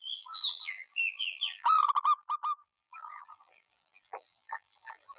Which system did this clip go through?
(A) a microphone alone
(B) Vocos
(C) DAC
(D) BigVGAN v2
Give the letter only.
D